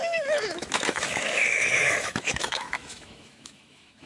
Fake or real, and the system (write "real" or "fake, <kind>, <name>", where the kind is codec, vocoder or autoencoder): fake, autoencoder, DAC-VAE